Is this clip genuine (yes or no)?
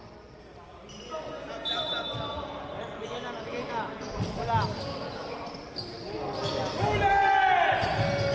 yes